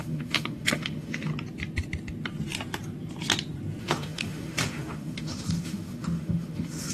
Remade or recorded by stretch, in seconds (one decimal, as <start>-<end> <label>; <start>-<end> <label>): 0.0-1.3 remade; 1.3-3.8 recorded; 3.8-6.9 remade